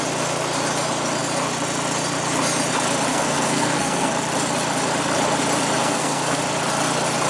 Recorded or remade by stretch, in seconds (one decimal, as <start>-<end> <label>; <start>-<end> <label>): 0.0-3.1 recorded; 3.1-4.1 remade; 4.1-5.8 recorded; 5.8-6.4 remade; 6.4-7.3 recorded

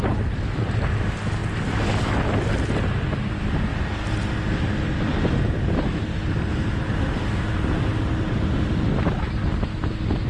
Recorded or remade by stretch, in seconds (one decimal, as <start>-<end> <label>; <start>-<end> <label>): 0.0-10.3 recorded